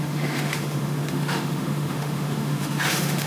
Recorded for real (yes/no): no